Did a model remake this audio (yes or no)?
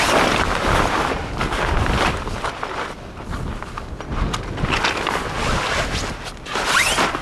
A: no